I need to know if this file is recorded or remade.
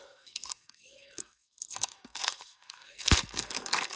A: remade